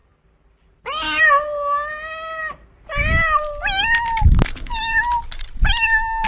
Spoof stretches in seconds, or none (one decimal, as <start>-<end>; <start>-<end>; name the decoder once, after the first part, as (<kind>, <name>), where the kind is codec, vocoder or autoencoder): none